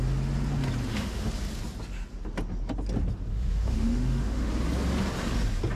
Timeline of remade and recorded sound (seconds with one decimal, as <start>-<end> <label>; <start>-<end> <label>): 0.0-0.8 recorded; 0.8-1.3 remade; 1.3-3.3 recorded; 3.3-4.5 remade; 4.5-5.8 recorded